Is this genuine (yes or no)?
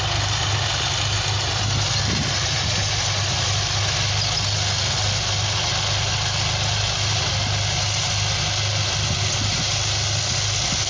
yes